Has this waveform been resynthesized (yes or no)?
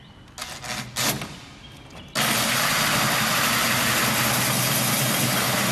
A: no